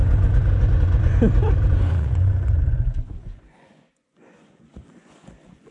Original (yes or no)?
no